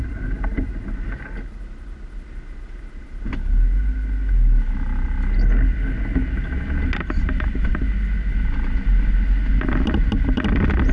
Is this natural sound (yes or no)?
yes